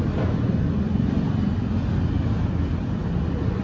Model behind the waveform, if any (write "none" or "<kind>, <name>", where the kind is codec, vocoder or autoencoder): none